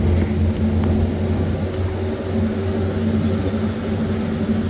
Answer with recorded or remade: recorded